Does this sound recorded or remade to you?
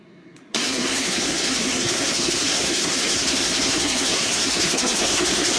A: remade